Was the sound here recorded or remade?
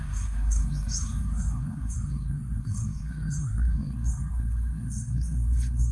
remade